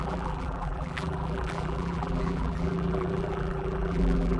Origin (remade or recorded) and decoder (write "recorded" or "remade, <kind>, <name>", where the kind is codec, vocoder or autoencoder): remade, vocoder, BigVGAN v2